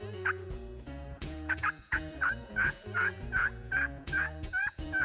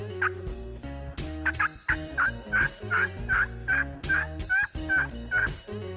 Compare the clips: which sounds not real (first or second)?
first